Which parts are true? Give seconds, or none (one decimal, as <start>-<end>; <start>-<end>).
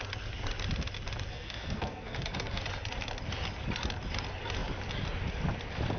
0.0-1.3; 2.6-6.0